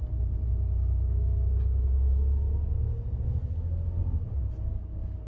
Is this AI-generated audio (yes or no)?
no